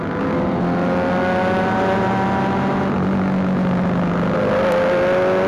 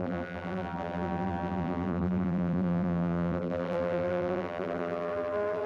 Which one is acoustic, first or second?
first